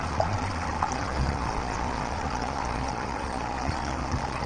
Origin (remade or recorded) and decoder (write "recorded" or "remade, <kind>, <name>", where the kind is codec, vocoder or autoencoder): remade, vocoder, Vocos